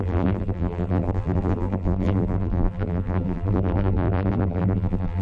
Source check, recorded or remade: remade